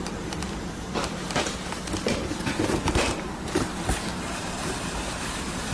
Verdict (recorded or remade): remade